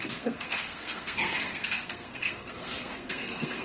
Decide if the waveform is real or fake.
fake